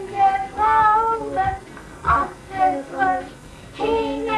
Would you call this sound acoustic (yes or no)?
no